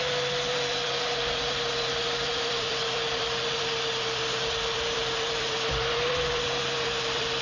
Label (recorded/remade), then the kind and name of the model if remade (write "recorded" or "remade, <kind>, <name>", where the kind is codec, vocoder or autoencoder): remade, vocoder, BigVGAN v2